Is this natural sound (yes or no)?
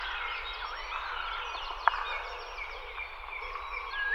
yes